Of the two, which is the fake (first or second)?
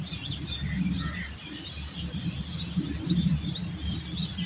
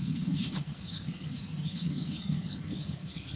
second